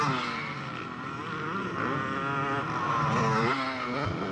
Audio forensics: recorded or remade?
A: recorded